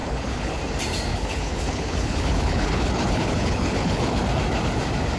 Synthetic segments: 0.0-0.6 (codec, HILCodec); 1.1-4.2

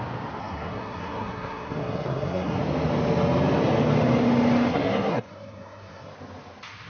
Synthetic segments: 0.4-2.6 (codec, SNAC); 4.7-6.1

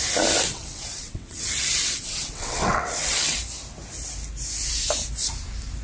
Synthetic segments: 0.5-3.4 (vocoder, WaveNeXt)

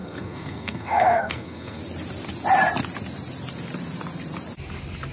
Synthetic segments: 0.0-1.8 (codec, SNAC)

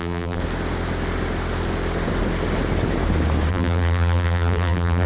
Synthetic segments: 0.0-0.4 (vocoder, BigVGAN v2); 3.5-5.1

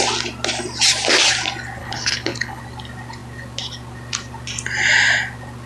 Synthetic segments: 1.8-2.6 (codec, HILCodec)

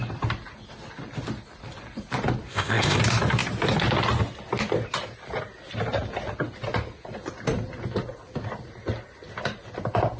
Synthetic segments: 2.5-3.0 (codec, ZipCodec)

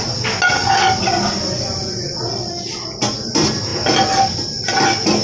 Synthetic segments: none